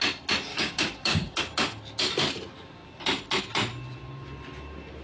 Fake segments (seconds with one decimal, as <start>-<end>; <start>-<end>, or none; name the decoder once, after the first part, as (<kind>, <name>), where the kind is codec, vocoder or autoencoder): 0.5-1.4 (codec, DAC)